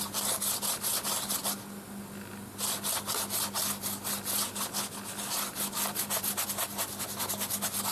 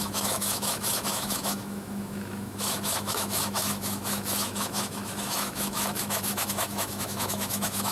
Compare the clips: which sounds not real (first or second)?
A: second